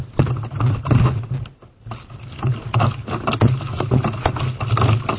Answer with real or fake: real